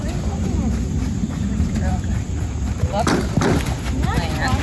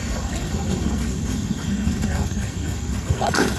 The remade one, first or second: second